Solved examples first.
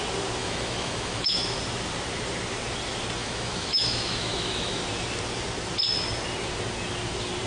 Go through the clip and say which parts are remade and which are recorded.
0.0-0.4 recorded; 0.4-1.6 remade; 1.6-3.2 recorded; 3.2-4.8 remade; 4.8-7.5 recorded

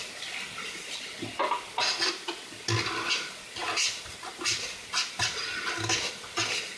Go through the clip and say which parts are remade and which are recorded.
0.0-6.8 recorded

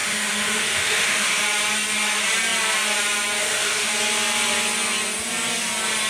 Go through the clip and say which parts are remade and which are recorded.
0.0-1.4 remade; 1.4-3.4 recorded; 3.4-3.9 remade; 3.9-6.1 recorded

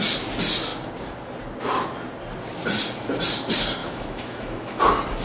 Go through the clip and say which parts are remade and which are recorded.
0.0-3.8 recorded; 3.8-4.8 remade; 4.8-5.2 recorded

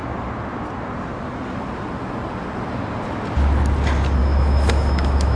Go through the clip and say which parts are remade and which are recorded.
0.0-4.2 recorded; 4.2-5.4 remade

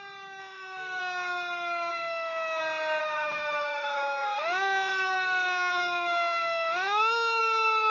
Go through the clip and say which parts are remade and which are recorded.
0.0-0.4 recorded; 0.4-1.0 remade; 1.0-1.9 recorded; 1.9-2.6 remade; 2.6-3.0 recorded; 3.0-7.4 remade; 7.4-7.9 recorded

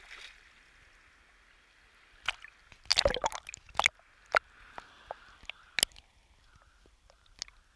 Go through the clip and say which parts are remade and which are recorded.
0.0-7.8 recorded